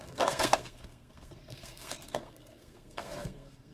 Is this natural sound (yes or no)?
no